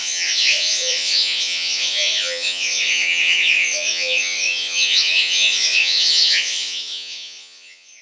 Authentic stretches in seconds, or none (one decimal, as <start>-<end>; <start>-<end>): none